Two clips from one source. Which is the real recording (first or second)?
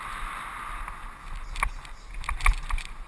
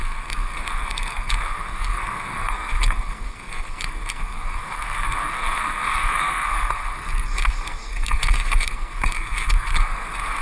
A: first